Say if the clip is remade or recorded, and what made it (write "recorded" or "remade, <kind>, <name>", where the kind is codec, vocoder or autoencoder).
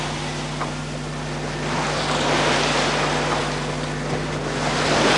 recorded